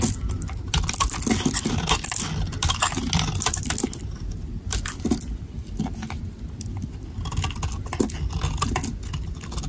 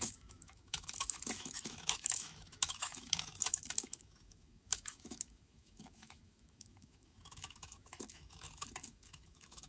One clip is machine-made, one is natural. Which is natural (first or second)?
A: first